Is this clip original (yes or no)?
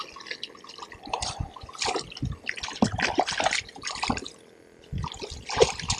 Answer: yes